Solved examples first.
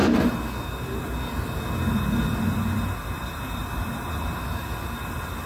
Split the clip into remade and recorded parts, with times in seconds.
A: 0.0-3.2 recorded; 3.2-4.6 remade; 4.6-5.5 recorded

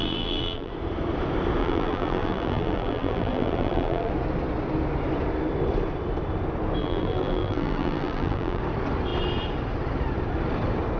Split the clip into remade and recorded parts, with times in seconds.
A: 0.0-0.7 remade; 0.7-1.6 recorded; 1.6-4.1 remade; 4.1-6.8 recorded; 6.8-8.6 remade; 8.6-11.0 recorded

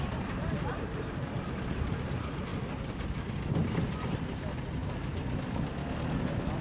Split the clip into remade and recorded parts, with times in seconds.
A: 0.0-2.5 remade; 2.5-4.2 recorded; 4.2-4.8 remade; 4.8-6.6 recorded

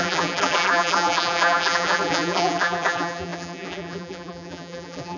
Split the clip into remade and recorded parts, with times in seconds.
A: 0.0-5.2 remade